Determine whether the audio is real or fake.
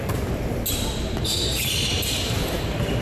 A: real